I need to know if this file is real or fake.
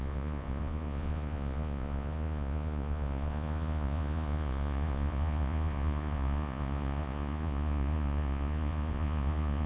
fake